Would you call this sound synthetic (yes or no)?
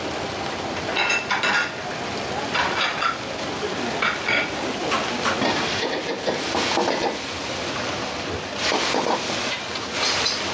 no